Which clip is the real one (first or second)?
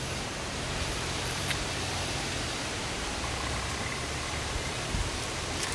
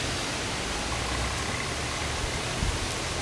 second